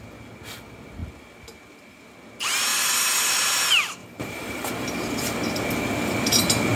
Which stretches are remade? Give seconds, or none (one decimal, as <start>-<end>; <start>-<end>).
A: 2.7-3.3; 4.0-4.7